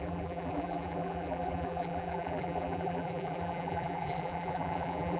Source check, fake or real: fake